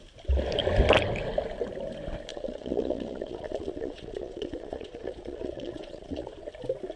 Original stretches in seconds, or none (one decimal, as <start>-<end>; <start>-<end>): 0.0-2.3; 6.5-7.0